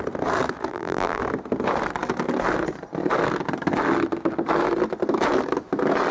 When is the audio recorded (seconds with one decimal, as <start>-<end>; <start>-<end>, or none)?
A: 0.0-0.7; 1.2-6.1